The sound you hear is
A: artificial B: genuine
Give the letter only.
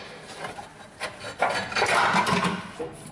B